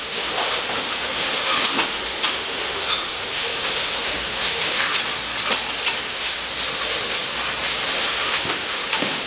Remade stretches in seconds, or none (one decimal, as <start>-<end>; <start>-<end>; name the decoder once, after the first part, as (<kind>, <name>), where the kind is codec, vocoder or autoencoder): 0.0-5.0 (autoencoder, DAC-VAE); 6.0-6.5; 7.9-9.3